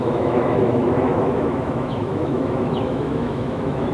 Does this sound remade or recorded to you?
remade